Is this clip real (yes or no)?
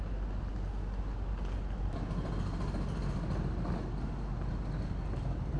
yes